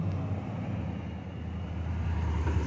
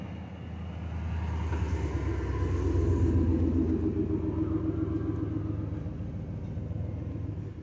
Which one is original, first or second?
second